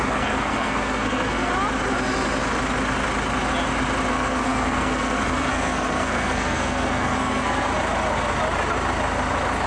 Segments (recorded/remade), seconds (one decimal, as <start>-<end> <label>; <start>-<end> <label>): 0.0-1.5 remade; 1.5-4.1 recorded; 4.1-7.7 remade; 7.7-9.7 recorded